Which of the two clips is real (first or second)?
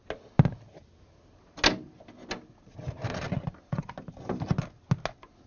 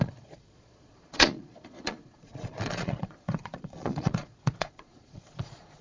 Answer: first